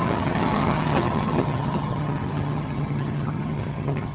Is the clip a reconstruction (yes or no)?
yes